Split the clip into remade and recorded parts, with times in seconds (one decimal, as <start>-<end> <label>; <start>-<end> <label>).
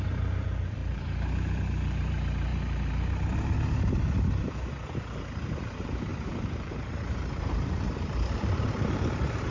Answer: 0.0-2.5 remade; 2.5-4.3 recorded; 4.3-9.5 remade